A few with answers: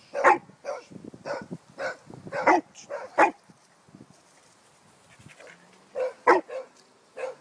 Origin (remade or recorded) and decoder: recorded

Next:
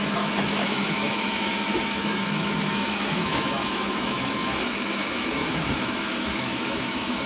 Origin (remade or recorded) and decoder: remade, autoencoder, DAC-VAE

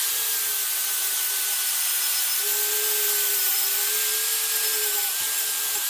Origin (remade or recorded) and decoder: recorded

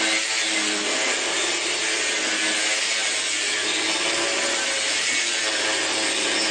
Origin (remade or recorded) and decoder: recorded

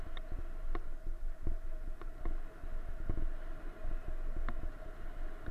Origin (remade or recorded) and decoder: recorded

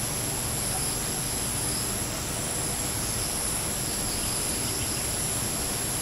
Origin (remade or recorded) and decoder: recorded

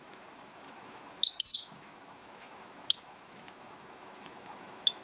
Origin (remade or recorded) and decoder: remade, autoencoder, DAC-VAE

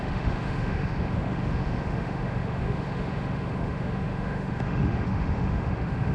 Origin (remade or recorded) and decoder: remade, autoencoder, DAC-VAE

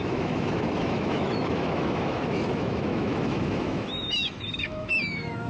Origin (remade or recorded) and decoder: remade, autoencoder, DAC-VAE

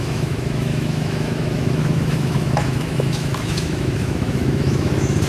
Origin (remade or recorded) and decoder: remade, autoencoder, DAC-VAE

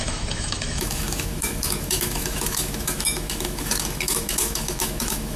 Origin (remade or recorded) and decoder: remade, autoencoder, DAC-VAE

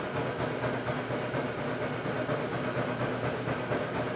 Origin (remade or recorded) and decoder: recorded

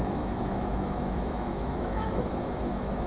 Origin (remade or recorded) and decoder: remade, autoencoder, DAC-VAE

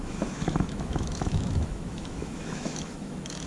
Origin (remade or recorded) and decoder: remade, autoencoder, DAC-VAE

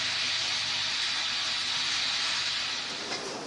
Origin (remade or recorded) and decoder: recorded